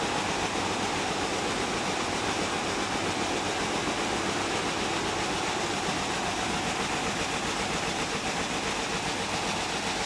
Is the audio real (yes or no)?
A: yes